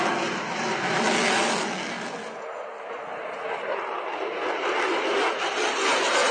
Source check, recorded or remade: recorded